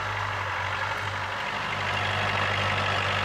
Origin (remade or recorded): recorded